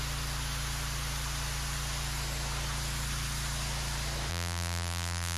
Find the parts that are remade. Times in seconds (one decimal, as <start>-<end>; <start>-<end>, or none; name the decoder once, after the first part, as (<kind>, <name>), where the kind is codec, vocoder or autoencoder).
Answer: 4.3-5.4 (vocoder, BigVGAN v2)